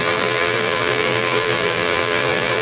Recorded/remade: remade